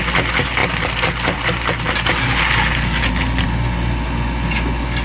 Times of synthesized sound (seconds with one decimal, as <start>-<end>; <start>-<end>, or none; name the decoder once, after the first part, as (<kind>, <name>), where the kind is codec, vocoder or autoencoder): none